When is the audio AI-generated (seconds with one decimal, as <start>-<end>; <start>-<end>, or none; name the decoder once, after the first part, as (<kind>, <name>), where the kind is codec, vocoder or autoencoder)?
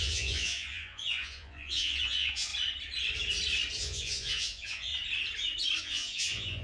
0.0-2.5 (vocoder, Vocos); 3.8-4.9; 5.8-6.6